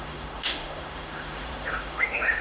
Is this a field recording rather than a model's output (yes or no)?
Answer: no